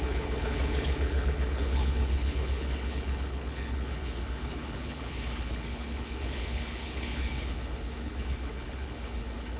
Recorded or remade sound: remade